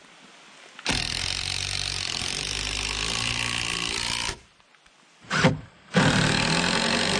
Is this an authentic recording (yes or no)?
yes